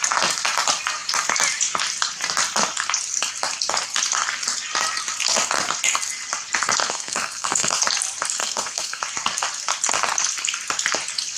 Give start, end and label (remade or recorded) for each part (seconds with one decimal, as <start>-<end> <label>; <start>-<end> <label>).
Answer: 0.0-6.8 recorded; 6.8-7.8 remade; 7.8-8.4 recorded; 8.4-9.0 remade; 9.0-11.4 recorded